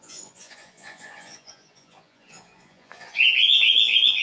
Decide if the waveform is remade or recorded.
remade